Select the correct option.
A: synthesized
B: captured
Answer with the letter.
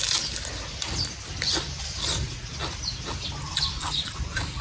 B